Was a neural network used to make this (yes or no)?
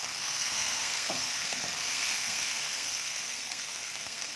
yes